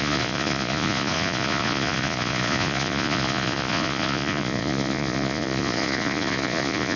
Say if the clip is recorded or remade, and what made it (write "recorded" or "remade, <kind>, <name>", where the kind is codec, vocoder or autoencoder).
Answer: remade, vocoder, Vocos